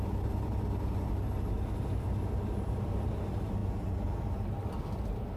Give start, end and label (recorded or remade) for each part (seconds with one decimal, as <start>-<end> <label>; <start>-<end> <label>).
0.0-3.6 recorded; 3.6-4.2 remade; 4.2-5.4 recorded